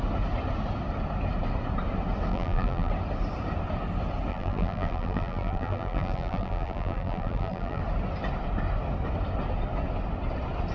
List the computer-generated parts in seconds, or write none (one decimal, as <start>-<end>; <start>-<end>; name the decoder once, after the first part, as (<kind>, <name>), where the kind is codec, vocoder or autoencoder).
2.3-2.9 (vocoder, BigVGAN v2); 4.3-7.8